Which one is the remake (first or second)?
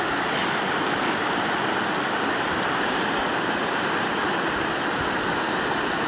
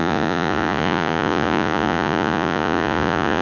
second